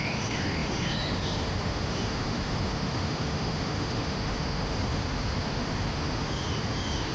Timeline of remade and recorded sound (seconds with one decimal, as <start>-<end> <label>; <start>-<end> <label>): 0.0-7.1 remade